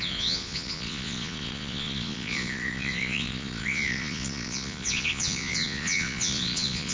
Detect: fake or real fake